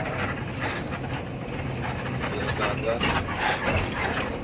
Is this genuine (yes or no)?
yes